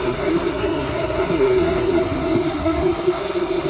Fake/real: fake